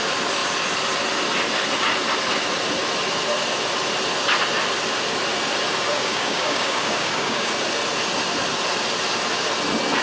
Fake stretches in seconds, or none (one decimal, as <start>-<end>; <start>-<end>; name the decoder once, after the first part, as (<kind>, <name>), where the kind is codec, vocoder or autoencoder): 5.9-7.5 (codec, DAC)